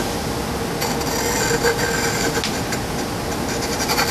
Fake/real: real